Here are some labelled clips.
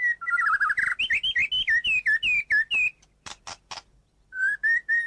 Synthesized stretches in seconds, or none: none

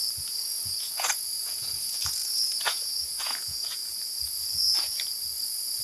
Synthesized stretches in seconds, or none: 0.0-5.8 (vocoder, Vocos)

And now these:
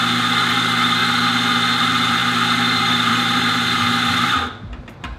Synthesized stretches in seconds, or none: 2.2-4.8 (vocoder, BigVGAN v2)

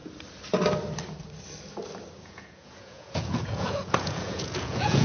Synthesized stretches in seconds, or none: 2.2-5.0 (vocoder, Vocos)